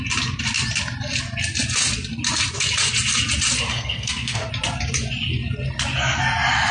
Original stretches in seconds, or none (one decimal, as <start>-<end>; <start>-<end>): 0.0-3.7; 4.5-6.7